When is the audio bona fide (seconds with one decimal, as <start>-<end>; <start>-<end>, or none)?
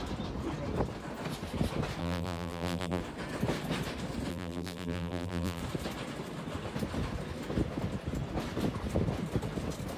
0.0-2.0; 3.0-4.3; 5.6-10.0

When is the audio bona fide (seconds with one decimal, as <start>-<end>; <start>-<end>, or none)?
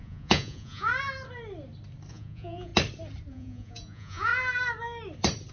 0.9-2.1; 2.7-3.3; 4.3-5.5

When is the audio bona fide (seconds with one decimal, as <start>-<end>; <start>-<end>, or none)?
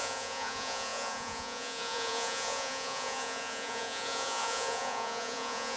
none